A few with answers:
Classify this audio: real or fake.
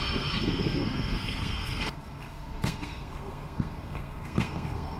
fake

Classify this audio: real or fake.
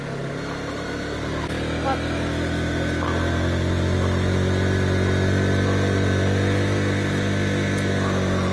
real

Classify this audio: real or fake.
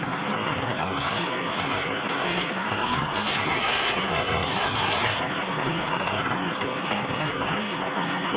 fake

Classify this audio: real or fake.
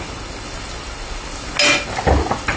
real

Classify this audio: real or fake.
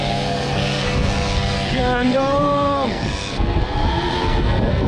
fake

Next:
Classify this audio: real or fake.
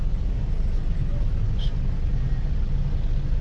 real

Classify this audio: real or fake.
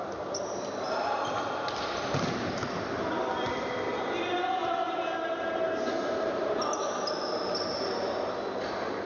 real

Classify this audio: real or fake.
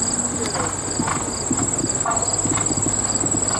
real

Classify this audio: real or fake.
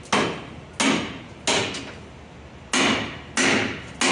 real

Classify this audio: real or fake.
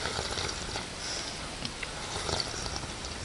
real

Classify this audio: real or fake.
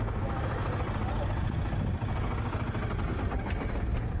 real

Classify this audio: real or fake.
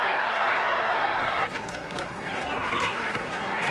fake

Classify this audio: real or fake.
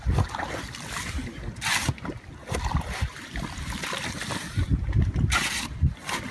real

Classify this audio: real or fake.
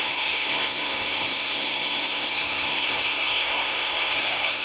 fake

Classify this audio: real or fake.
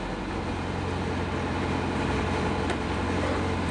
real